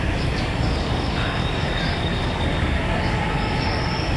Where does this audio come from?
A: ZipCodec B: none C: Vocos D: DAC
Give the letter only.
D